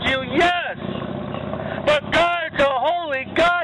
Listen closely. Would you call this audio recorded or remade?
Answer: recorded